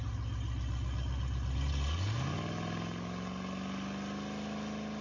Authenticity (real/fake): real